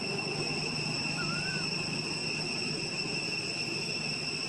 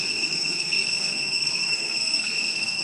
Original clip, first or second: first